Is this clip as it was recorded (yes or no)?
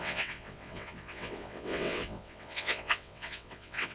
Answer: no